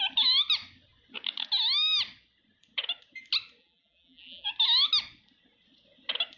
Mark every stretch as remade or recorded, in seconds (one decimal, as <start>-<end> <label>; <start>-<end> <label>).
0.0-3.6 recorded; 3.6-4.5 remade; 4.5-6.4 recorded